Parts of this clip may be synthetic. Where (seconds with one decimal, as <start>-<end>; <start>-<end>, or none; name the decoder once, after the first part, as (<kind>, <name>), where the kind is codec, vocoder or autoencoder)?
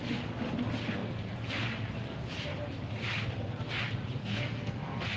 4.2-5.2 (codec, SNAC)